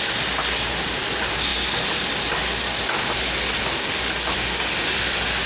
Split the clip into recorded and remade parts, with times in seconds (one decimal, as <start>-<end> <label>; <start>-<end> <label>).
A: 0.0-5.5 recorded